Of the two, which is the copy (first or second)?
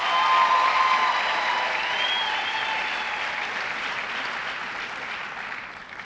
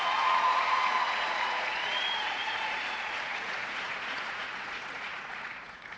second